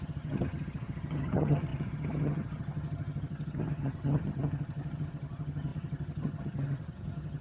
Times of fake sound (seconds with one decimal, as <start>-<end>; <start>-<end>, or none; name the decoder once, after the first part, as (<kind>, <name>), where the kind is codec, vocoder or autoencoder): 0.0-7.4 (vocoder, HiFi-GAN)